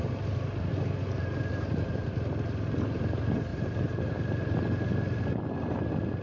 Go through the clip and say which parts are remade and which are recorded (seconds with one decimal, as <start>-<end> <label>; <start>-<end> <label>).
0.0-6.2 recorded